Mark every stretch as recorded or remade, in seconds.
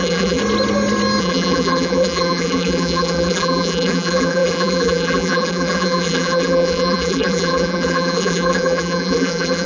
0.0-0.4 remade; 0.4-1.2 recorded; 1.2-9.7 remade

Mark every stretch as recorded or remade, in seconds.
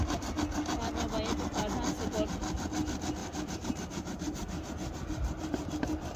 0.0-3.2 recorded; 3.2-6.2 remade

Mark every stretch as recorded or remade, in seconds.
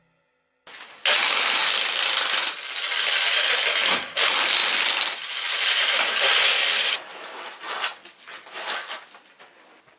0.0-4.6 recorded; 4.6-7.8 remade; 7.8-10.0 recorded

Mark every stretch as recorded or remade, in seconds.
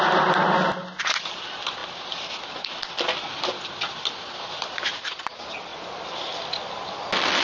0.0-7.4 recorded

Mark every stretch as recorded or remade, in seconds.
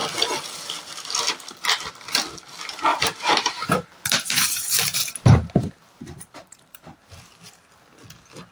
0.0-2.9 recorded; 2.9-7.1 remade; 7.1-8.5 recorded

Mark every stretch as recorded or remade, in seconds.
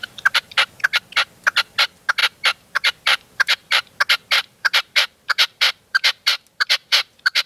0.0-0.7 remade; 0.7-2.2 recorded; 2.2-4.0 remade; 4.0-4.4 recorded; 4.4-7.5 remade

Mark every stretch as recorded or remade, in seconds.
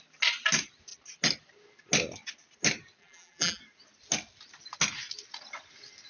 0.0-3.0 recorded; 3.0-3.6 remade; 3.6-6.1 recorded